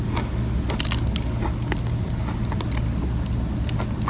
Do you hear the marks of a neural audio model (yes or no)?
no